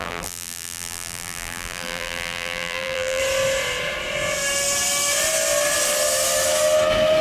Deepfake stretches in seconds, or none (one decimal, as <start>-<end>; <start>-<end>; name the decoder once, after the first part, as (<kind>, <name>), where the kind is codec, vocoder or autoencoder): 0.0-3.2 (vocoder, BigVGAN v2)